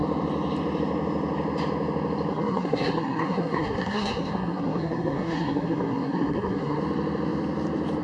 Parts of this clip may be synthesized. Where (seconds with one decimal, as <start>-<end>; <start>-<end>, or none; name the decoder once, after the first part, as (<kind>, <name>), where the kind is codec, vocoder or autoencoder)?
2.3-6.8 (codec, SNAC)